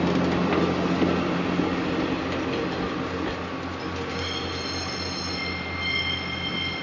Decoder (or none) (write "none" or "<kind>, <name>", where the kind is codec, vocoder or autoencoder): none